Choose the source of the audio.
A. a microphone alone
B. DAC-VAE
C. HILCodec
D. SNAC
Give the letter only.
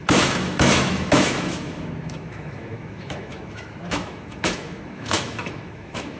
B